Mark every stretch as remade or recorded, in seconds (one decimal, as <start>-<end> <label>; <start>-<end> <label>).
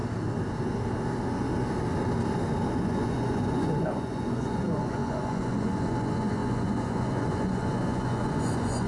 0.0-2.8 recorded; 2.8-8.9 remade